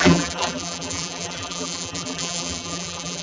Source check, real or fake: fake